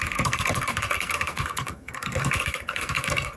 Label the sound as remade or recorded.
remade